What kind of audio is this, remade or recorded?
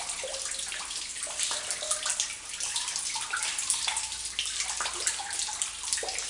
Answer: recorded